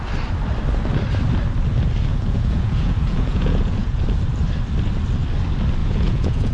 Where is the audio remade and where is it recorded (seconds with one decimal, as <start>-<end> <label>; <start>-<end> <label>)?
0.0-2.1 recorded; 2.1-4.0 remade; 4.0-5.8 recorded; 5.8-6.5 remade